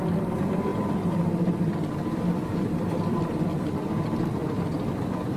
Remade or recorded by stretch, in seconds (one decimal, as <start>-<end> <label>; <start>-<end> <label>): 0.0-5.4 recorded